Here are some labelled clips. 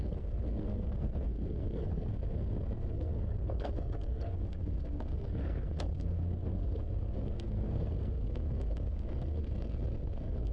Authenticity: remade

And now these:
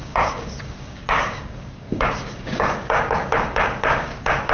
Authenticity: remade